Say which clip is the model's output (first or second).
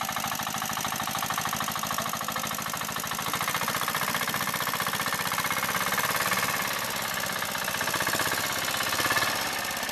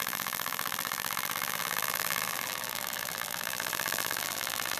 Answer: second